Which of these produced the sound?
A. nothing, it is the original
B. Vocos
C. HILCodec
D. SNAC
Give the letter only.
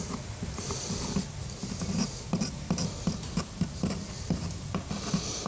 A